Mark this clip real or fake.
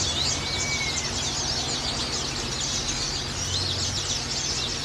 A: real